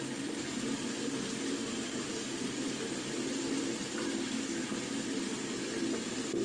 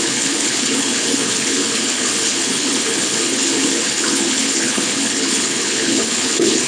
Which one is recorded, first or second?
first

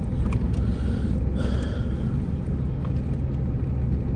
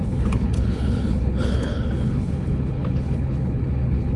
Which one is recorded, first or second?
first